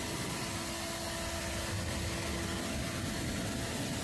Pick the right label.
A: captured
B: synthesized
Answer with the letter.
A